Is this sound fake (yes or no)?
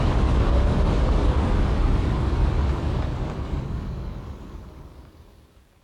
yes